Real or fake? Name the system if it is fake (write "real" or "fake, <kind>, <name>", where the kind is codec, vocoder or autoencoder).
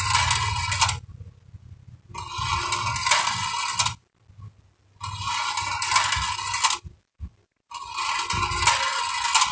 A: real